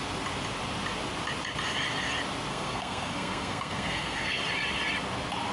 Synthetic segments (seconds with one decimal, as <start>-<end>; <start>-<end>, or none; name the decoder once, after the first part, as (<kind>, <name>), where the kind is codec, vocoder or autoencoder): 2.5-4.4 (codec, SNAC)